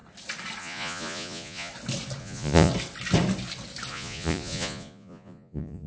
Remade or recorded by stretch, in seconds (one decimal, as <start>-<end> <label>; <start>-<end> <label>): 0.0-0.6 recorded; 0.6-1.7 remade; 1.7-2.2 recorded; 2.2-2.7 remade; 2.7-3.9 recorded; 3.9-5.9 remade

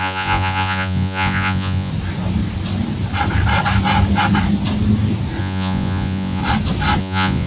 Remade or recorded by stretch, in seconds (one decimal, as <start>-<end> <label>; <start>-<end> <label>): 0.0-1.9 remade; 1.9-5.4 recorded; 5.4-6.4 remade; 6.4-7.0 recorded; 7.0-7.5 remade

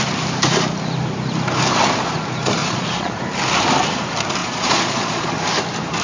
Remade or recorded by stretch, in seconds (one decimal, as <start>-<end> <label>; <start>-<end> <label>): 0.0-2.6 recorded; 2.6-3.2 remade; 3.2-4.4 recorded; 4.4-5.3 remade; 5.3-6.0 recorded

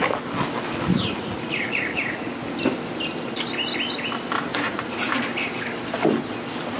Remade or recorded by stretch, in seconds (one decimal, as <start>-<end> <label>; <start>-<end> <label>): 0.0-0.9 recorded; 0.9-2.3 remade; 2.3-4.5 recorded; 4.5-5.1 remade; 5.1-6.8 recorded

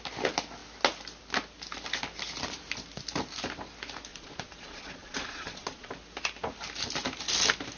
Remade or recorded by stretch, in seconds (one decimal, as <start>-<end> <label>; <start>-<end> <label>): 0.0-4.1 recorded; 4.1-5.9 remade; 5.9-7.8 recorded

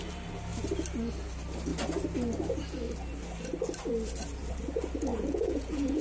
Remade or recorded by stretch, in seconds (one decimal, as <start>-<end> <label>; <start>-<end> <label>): 0.0-5.1 recorded; 5.1-6.0 remade

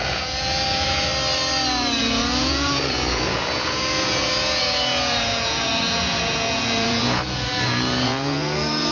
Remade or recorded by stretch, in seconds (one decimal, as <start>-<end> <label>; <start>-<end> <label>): 0.0-1.1 remade; 1.1-2.0 recorded; 2.0-8.9 remade